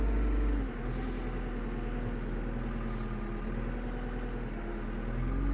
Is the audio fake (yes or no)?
no